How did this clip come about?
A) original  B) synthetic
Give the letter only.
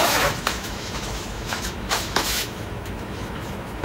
B